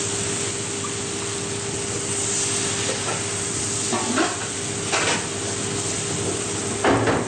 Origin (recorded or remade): recorded